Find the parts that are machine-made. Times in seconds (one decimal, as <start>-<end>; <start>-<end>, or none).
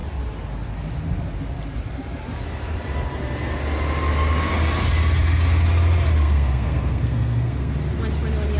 6.2-7.7